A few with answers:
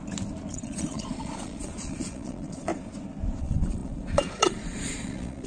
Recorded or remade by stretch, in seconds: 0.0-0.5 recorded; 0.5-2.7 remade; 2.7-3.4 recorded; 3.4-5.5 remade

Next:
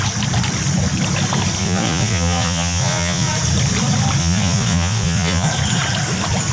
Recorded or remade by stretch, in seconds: 0.0-1.6 recorded; 1.6-3.3 remade; 3.3-4.2 recorded; 4.2-5.5 remade; 5.5-6.5 recorded

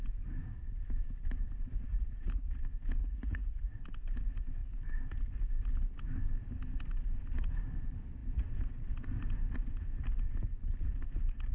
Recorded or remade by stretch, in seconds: 0.0-1.9 recorded; 1.9-2.6 remade; 2.6-3.0 recorded; 3.0-3.8 remade; 3.8-11.5 recorded

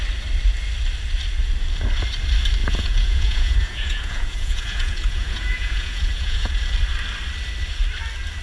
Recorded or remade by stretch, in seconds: 0.0-2.6 recorded; 2.6-6.6 remade; 6.6-8.4 recorded